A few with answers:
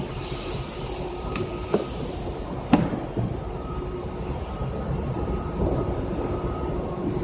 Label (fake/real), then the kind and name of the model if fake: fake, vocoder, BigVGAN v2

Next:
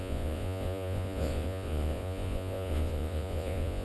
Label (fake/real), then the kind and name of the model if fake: fake, vocoder, Vocos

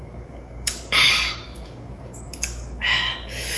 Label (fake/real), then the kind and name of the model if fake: fake, codec, DAC